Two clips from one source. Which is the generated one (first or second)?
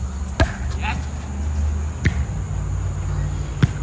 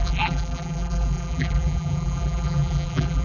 second